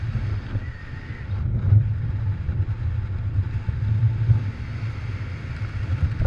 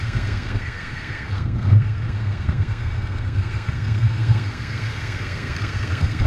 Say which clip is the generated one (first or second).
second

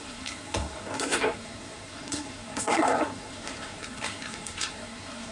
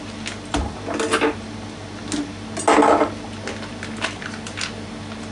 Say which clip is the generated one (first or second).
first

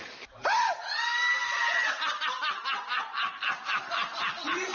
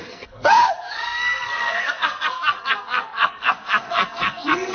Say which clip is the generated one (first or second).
second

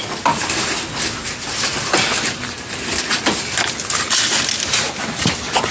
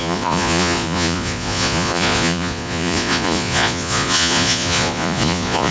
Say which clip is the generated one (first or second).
second